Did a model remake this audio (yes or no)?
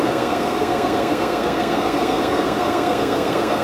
yes